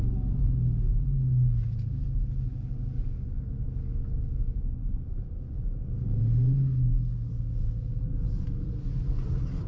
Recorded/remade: recorded